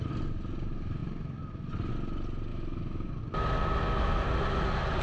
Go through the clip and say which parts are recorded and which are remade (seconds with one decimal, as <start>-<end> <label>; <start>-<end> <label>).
0.0-2.5 recorded; 2.5-3.2 remade; 3.2-5.0 recorded